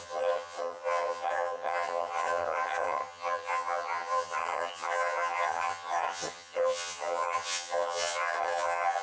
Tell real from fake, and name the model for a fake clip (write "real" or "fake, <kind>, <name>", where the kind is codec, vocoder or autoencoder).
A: fake, vocoder, HiFi-GAN